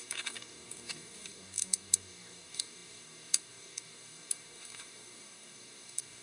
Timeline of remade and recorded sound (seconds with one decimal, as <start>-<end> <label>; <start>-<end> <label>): 0.0-6.2 remade